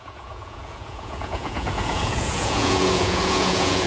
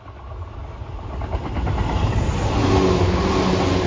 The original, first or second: second